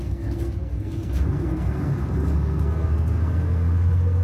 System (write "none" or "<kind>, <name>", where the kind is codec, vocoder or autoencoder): codec, SNAC